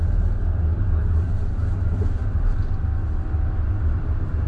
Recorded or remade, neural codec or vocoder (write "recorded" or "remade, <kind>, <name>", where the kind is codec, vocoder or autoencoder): recorded